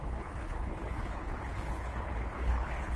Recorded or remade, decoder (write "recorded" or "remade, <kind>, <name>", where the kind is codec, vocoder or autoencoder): remade, codec, HILCodec